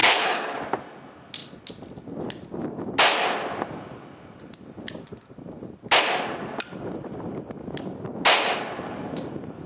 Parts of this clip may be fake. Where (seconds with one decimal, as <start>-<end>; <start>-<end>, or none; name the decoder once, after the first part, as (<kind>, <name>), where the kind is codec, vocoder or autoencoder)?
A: 0.0-0.6 (codec, HILCodec)